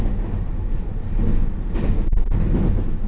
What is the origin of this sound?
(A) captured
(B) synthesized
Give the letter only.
A